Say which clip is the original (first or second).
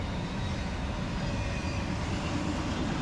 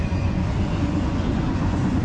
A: first